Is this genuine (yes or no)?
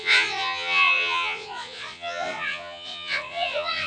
no